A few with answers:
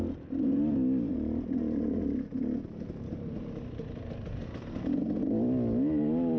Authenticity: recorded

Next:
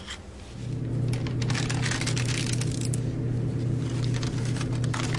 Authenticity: recorded